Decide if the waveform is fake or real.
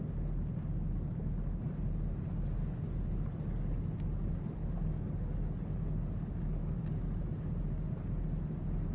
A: real